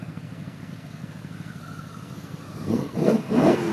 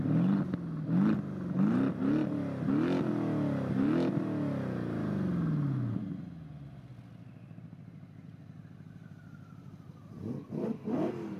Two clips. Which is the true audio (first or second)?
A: second